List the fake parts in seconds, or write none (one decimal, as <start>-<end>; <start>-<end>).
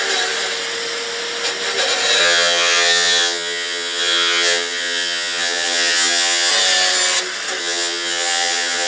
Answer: 2.2-6.5; 7.6-8.9